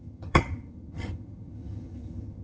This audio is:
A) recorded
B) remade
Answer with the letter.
B